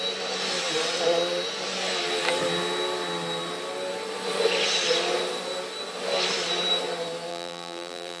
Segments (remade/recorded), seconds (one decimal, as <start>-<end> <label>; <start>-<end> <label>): 0.0-7.3 recorded; 7.3-8.2 remade